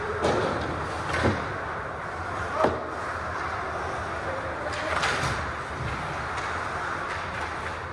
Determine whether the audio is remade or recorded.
recorded